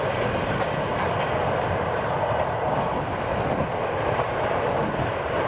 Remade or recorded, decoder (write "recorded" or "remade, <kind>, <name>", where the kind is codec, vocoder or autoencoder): recorded